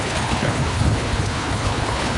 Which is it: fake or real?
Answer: fake